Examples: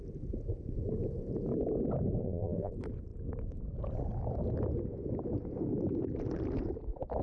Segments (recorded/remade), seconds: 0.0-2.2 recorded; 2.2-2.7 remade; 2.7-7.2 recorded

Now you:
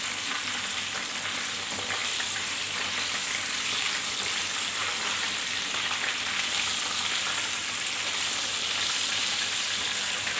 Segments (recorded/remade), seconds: 0.0-2.0 recorded; 2.0-4.1 remade; 4.1-10.4 recorded

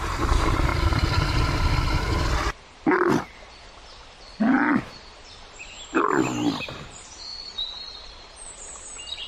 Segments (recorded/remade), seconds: 0.0-0.7 remade; 0.7-4.9 recorded; 4.9-5.9 remade; 5.9-6.6 recorded; 6.6-9.3 remade